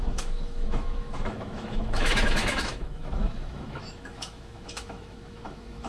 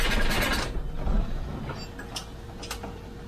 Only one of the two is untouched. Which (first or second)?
second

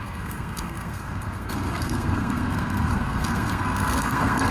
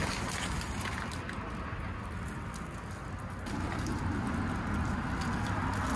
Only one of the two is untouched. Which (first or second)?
second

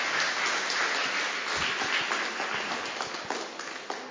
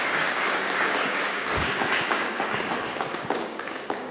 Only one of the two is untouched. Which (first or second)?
first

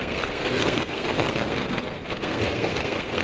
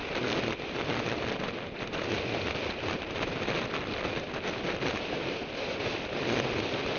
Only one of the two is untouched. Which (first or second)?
second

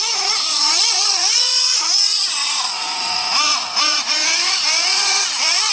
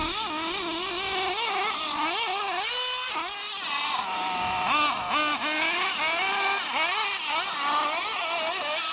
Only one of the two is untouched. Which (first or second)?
second